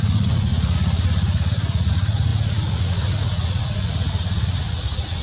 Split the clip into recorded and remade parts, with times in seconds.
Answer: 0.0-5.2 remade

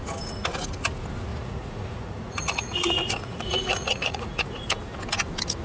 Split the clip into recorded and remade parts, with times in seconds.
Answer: 0.0-1.3 recorded; 1.3-4.7 remade; 4.7-5.6 recorded

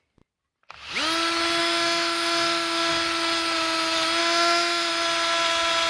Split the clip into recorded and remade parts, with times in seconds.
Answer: 0.0-1.6 recorded; 1.6-2.9 remade; 2.9-4.2 recorded; 4.2-4.9 remade; 4.9-5.9 recorded

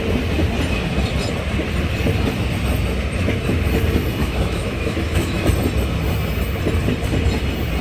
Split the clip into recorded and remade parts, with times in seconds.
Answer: 0.0-4.2 recorded; 4.2-5.5 remade; 5.5-7.8 recorded

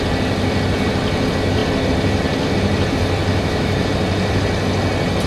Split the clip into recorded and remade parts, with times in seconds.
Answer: 0.0-3.3 recorded; 3.3-3.9 remade; 3.9-5.3 recorded